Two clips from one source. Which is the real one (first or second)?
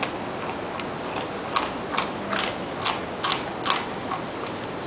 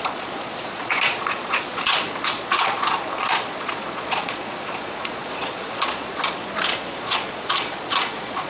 first